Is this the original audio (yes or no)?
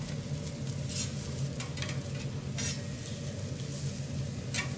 yes